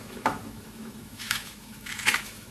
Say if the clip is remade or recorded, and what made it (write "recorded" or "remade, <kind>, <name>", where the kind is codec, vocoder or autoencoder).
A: remade, autoencoder, DAC-VAE